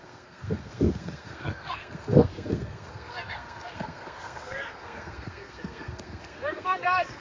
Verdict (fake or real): fake